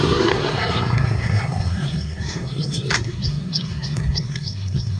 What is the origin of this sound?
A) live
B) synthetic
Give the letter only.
B